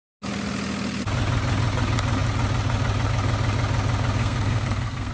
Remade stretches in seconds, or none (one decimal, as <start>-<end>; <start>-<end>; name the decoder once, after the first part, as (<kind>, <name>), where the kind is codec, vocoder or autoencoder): 4.2-5.1 (codec, SNAC)